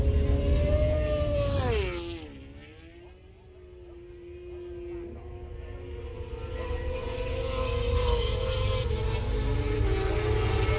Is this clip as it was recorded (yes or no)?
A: yes